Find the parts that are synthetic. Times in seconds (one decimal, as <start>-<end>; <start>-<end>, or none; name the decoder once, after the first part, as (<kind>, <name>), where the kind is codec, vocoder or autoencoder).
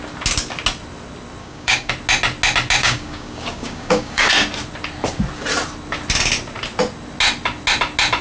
1.4-1.9 (codec, DAC); 2.8-4.3